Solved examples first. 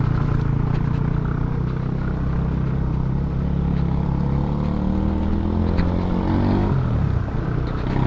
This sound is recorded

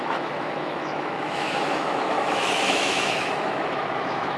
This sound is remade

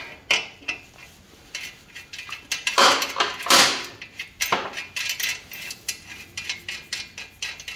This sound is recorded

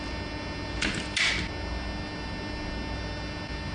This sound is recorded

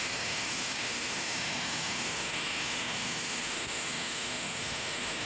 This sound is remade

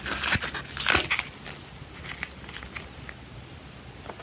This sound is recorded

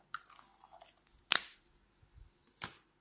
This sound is recorded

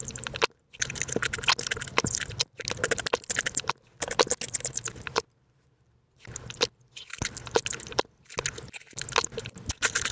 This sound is recorded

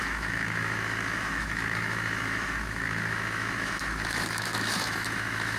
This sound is remade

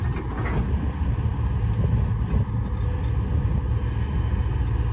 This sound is recorded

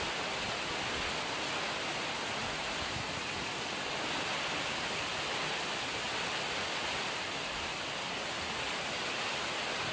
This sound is recorded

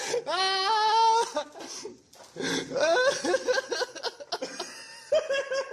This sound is recorded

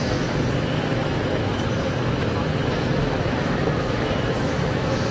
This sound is remade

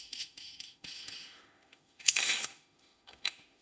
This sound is remade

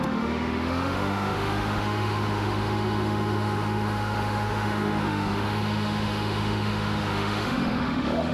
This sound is remade